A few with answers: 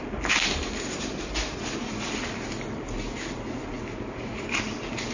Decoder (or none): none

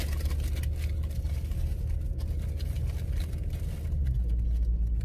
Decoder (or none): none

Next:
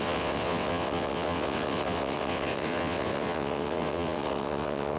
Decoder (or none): vocoder, WaveNeXt